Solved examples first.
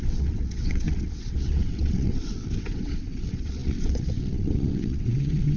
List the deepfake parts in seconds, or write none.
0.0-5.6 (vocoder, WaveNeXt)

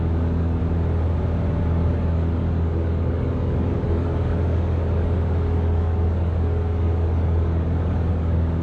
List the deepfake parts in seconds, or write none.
0.0-0.6 (codec, DAC); 1.6-8.6

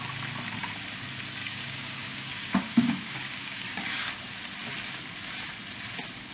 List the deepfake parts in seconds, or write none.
1.4-4.1 (codec, DAC)